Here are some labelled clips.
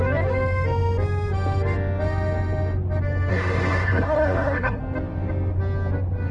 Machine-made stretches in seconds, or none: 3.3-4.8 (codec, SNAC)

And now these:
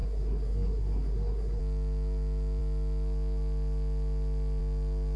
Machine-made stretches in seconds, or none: 0.0-1.6 (codec, SNAC)

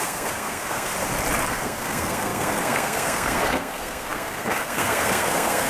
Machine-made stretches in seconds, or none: 0.0-0.9 (codec, SNAC); 1.4-5.7

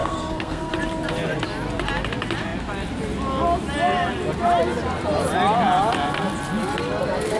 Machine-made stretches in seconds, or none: 0.0-0.7 (codec, SNAC)

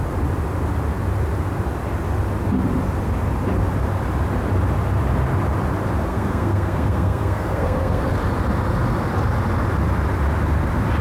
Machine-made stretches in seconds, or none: 6.1-8.1 (codec, SNAC)

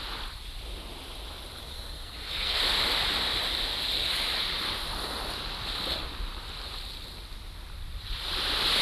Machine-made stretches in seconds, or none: 1.6-2.6 (codec, SNAC)

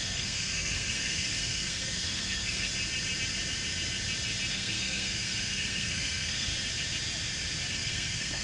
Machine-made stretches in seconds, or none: 0.0-2.7 (codec, SNAC); 4.5-6.5; 7.7-8.4

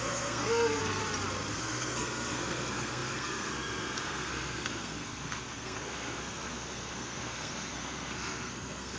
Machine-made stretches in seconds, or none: 0.0-1.0 (codec, SNAC); 1.5-9.0